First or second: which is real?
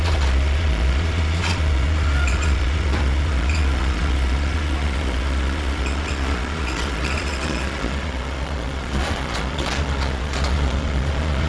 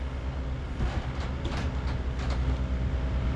second